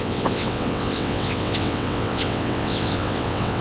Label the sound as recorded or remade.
remade